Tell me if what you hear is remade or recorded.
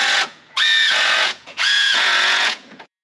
remade